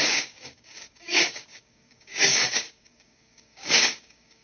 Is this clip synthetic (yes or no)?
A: yes